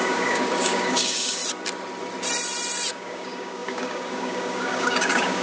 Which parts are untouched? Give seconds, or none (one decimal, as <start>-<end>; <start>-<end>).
1.4-2.9